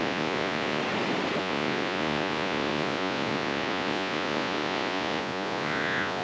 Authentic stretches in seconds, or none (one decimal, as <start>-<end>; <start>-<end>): 0.8-1.4